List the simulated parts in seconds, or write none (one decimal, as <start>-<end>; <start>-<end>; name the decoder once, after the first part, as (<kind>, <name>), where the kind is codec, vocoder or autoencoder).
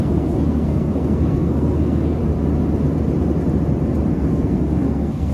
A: 0.0-2.2 (codec, SNAC); 4.1-5.3